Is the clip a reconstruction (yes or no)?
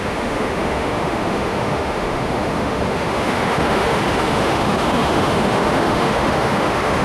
yes